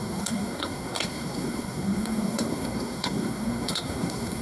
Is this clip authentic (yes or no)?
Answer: no